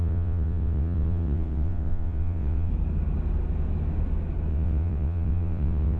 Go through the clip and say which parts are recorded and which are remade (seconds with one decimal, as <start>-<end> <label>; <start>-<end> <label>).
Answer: 0.0-2.7 remade; 2.7-4.5 recorded; 4.5-6.0 remade